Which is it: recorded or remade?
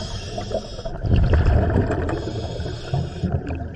recorded